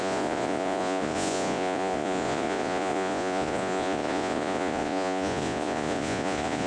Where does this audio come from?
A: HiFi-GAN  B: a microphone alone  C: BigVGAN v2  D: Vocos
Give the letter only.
D